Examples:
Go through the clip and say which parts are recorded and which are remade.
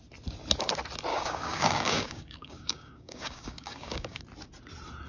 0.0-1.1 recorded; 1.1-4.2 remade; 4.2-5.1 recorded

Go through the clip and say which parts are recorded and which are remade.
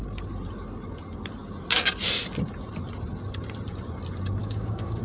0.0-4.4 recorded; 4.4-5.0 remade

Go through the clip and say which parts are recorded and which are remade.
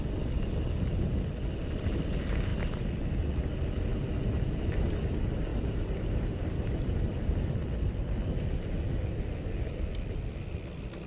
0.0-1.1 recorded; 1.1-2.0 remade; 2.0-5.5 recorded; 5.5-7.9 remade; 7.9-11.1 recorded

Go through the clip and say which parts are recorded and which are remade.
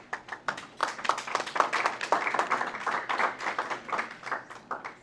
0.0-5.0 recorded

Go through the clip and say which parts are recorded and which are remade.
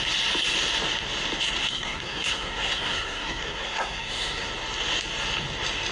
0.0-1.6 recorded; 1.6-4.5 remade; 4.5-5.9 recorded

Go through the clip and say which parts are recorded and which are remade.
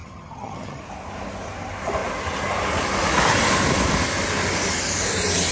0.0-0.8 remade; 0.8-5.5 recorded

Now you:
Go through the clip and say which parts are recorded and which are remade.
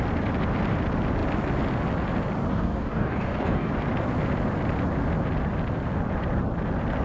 0.0-2.5 recorded; 2.5-3.7 remade; 3.7-7.0 recorded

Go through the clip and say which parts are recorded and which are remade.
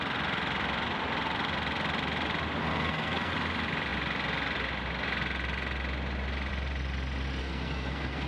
0.0-2.6 recorded; 2.6-3.3 remade; 3.3-7.4 recorded; 7.4-8.3 remade